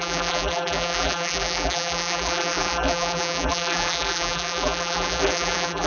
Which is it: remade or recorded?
remade